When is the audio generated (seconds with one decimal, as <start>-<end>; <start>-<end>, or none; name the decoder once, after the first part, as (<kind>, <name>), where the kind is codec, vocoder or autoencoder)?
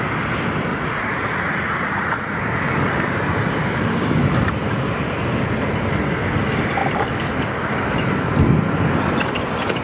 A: 0.7-2.4 (vocoder, Vocos)